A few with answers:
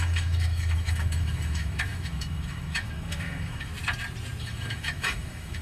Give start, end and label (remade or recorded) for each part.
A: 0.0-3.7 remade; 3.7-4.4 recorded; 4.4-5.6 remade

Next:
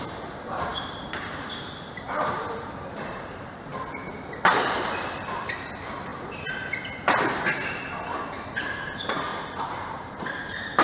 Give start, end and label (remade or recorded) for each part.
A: 0.0-3.7 remade; 3.7-5.6 recorded; 5.6-6.1 remade; 6.1-8.6 recorded; 8.6-10.8 remade